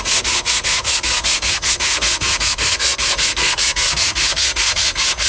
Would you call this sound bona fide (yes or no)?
no